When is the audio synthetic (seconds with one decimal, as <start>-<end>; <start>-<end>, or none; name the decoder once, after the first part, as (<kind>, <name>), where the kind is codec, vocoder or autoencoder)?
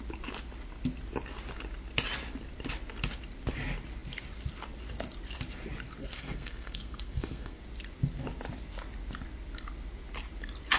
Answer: 6.0-7.6 (codec, SNAC)